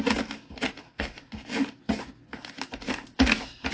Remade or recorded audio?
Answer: recorded